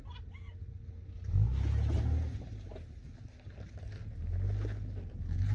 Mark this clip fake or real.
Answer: real